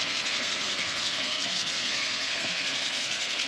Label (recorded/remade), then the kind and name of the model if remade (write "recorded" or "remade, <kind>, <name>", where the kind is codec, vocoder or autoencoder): remade, codec, SNAC